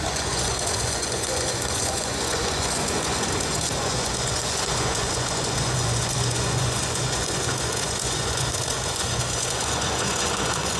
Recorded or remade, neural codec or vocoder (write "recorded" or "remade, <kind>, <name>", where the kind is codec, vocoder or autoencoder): remade, vocoder, Vocos